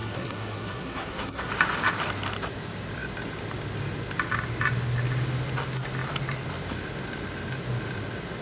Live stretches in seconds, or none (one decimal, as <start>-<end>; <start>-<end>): 1.5-8.4